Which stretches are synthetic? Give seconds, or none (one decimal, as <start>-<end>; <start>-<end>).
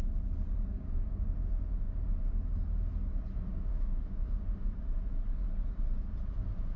1.1-2.0; 3.3-4.7